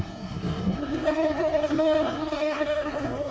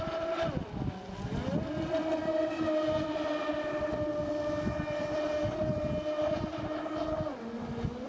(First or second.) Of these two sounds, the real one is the second